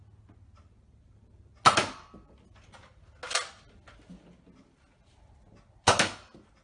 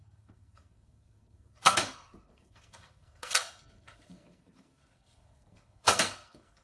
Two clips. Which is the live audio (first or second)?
first